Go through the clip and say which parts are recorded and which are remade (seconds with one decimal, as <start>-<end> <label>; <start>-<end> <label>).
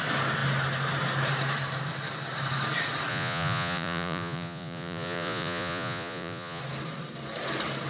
0.0-3.1 recorded; 3.1-6.6 remade; 6.6-7.9 recorded